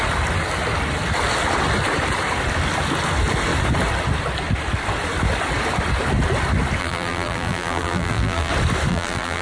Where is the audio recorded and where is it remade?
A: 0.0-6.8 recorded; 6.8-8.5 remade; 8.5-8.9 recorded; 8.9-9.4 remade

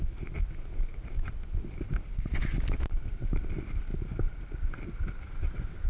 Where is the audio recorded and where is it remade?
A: 0.0-5.9 recorded

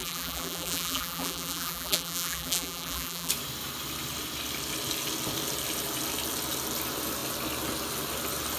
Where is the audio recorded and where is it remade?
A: 0.0-3.3 remade; 3.3-8.6 recorded

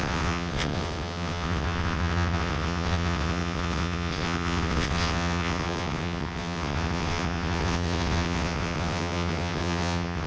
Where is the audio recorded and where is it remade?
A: 0.0-10.3 remade

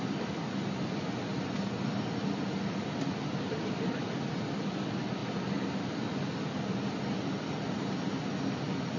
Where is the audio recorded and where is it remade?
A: 0.0-9.0 recorded

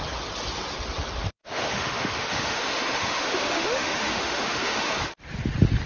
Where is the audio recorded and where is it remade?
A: 0.0-1.4 recorded; 1.4-4.9 remade; 4.9-5.9 recorded

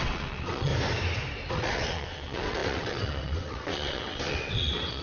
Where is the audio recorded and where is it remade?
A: 0.0-0.7 remade; 0.7-1.5 recorded; 1.5-5.0 remade